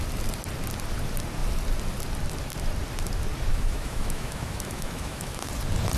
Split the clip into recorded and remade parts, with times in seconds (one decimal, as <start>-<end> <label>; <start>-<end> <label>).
0.0-3.5 recorded; 3.5-5.5 remade; 5.5-6.0 recorded